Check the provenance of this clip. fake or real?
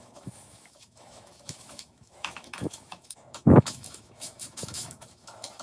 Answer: fake